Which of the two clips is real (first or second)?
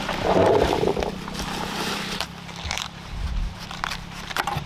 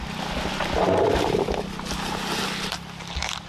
second